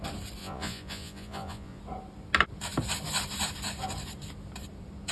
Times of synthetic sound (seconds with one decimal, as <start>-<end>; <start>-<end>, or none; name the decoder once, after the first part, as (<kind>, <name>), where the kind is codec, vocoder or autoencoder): 0.4-1.8 (vocoder, Vocos)